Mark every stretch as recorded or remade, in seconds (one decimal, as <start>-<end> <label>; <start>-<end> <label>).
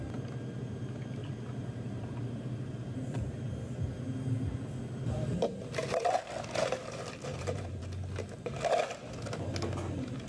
0.0-1.2 recorded; 1.2-3.4 remade; 3.4-7.3 recorded; 7.3-7.8 remade; 7.8-10.3 recorded